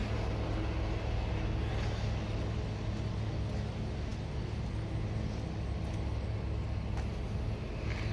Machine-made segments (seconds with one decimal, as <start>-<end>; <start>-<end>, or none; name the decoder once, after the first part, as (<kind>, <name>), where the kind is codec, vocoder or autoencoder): none